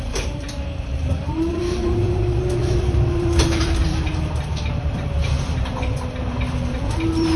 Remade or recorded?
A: remade